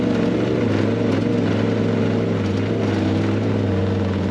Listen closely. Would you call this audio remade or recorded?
recorded